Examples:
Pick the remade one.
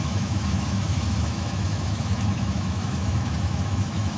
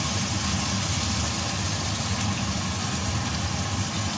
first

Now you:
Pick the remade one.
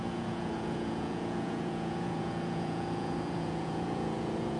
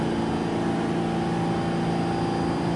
first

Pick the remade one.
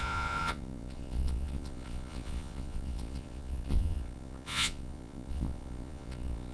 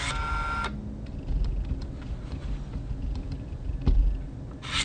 first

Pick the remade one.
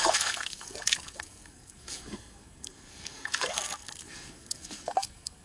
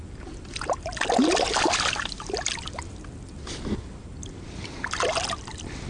first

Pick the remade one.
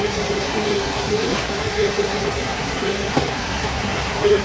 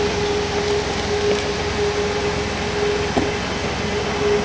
first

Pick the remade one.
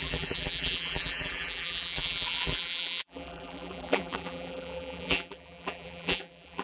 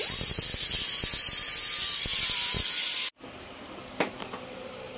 first